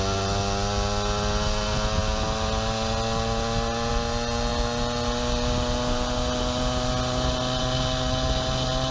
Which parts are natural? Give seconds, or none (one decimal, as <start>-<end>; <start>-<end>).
0.0-8.9